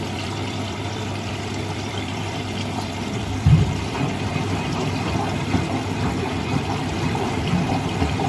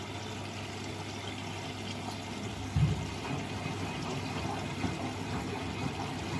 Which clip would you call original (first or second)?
second